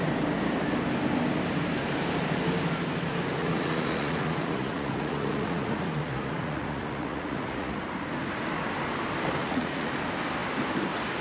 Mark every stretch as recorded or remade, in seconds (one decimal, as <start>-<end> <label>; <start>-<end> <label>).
0.0-3.4 recorded; 3.4-7.9 remade; 7.9-9.4 recorded; 9.4-9.9 remade; 9.9-11.2 recorded